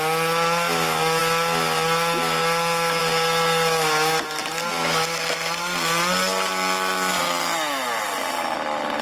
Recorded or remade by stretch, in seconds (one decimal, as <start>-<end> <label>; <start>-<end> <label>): 0.0-9.0 recorded